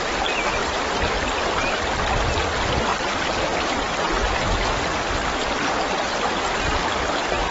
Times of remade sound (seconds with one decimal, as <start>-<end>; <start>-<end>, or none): 0.6-1.6; 2.9-5.1